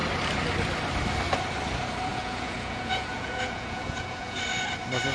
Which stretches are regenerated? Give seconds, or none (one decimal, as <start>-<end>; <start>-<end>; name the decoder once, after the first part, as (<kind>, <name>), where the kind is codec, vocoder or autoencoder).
2.1-4.4 (vocoder, Vocos)